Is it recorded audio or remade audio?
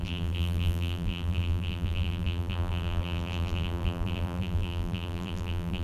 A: remade